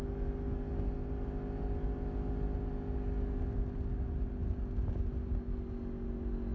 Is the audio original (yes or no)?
yes